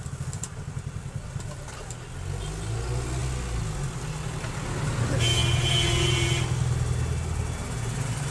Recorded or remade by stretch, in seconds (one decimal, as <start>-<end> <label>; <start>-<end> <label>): 0.0-8.3 recorded